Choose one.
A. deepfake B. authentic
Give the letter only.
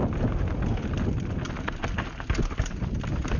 B